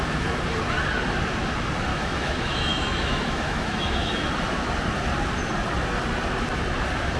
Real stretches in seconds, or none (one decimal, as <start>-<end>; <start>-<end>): 0.0-1.9; 4.3-7.2

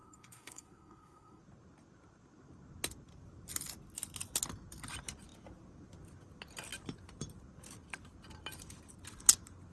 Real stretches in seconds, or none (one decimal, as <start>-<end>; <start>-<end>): 1.4-9.7

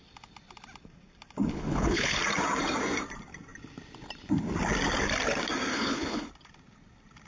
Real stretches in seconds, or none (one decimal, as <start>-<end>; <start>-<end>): 0.0-1.5; 2.2-5.7; 6.3-7.3

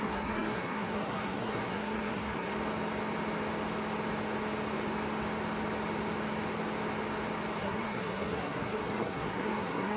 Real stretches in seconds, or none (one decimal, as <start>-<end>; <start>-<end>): 2.5-7.6

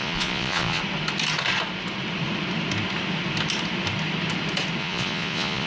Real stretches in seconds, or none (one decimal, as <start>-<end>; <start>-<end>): 0.8-4.8

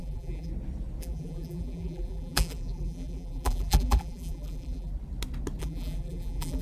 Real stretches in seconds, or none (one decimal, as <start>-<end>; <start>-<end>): 0.5-1.0; 4.9-5.6

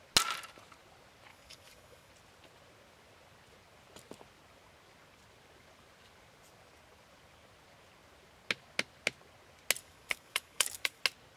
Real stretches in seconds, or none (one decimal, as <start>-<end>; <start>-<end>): 0.0-1.3; 2.1-9.8; 11.0-11.4

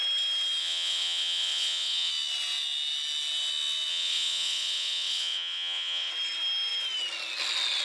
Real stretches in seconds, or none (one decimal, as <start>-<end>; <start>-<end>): 0.0-0.6; 2.1-3.9; 6.1-7.8